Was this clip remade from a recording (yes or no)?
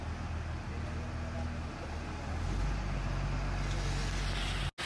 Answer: no